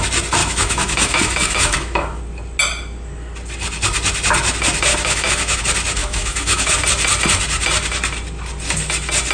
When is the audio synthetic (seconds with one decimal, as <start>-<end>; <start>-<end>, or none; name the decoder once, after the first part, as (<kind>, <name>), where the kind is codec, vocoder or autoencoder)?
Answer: 0.4-2.2 (autoencoder, DAC-VAE); 4.9-5.6; 6.0-6.8